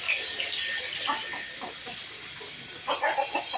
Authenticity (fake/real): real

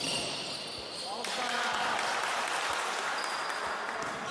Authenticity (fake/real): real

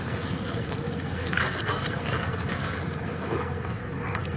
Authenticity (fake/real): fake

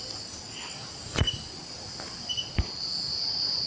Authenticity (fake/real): real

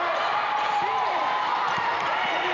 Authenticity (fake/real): fake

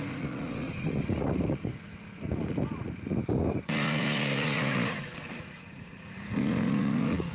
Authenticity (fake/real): fake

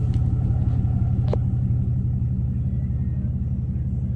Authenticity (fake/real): real